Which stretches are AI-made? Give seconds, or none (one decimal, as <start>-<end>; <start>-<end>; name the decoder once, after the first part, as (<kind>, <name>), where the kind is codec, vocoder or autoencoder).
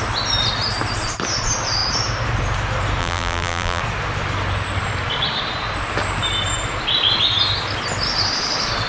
3.0-3.8 (vocoder, BigVGAN v2)